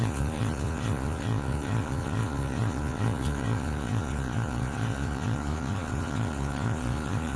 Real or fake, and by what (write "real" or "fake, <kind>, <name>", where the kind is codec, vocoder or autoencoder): fake, vocoder, Vocos